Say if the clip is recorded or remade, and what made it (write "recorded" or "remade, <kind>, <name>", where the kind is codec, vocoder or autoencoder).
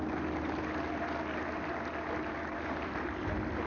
recorded